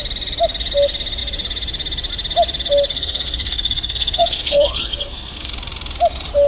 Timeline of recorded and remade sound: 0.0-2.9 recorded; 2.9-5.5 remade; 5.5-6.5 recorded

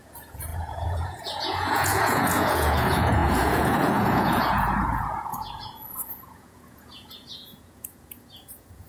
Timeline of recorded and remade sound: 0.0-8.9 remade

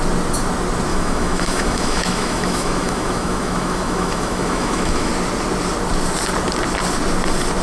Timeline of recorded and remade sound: 0.0-0.9 recorded; 0.9-5.1 remade; 5.1-7.6 recorded

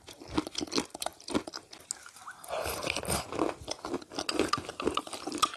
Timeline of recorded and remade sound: 0.0-5.6 recorded

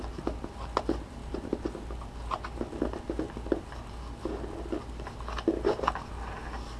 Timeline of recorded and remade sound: 0.0-6.8 recorded